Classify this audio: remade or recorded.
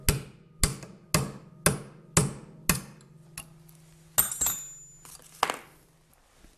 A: recorded